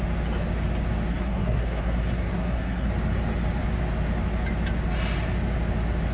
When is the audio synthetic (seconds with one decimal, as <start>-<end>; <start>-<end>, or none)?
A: 1.1-2.9